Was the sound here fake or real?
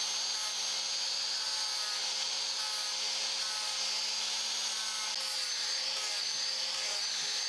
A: real